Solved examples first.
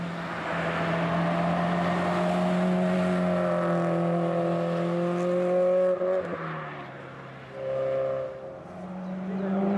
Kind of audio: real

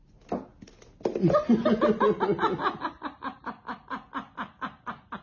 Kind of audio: real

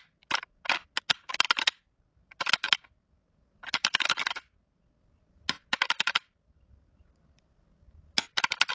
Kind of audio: real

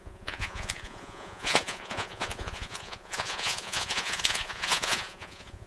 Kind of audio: fake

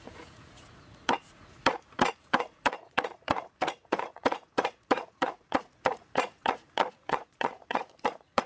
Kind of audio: fake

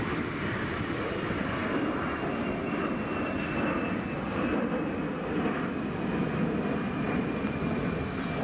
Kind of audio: real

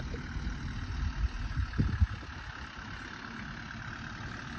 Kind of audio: real